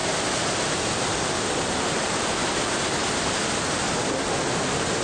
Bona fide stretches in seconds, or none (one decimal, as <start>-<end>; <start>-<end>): 0.0-5.0